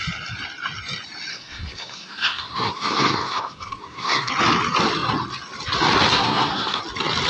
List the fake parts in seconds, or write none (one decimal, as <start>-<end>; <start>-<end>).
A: 1.3-4.3; 6.1-6.8